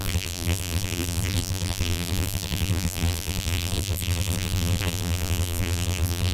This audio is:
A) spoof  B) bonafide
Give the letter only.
A